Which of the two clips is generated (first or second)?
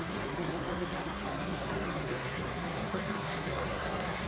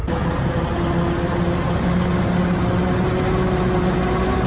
first